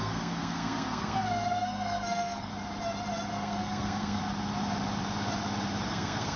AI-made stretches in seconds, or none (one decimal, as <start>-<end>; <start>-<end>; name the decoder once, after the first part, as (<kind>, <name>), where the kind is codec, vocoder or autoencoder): 0.0-2.5 (codec, SNAC); 3.3-4.2; 5.9-6.4